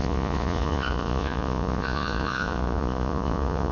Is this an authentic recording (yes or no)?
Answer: no